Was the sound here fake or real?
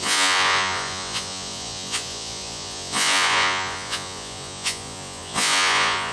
fake